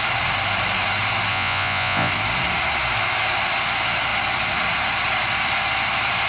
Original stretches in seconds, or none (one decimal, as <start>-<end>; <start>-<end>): 0.0-1.3; 2.1-6.3